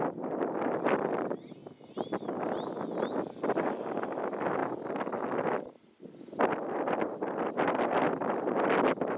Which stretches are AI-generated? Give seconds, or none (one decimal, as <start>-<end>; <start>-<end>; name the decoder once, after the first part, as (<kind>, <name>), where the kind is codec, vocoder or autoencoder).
none